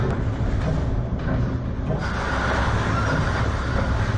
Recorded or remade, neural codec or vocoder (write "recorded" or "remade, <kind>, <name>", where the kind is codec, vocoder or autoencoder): recorded